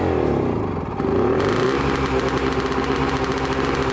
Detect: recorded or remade recorded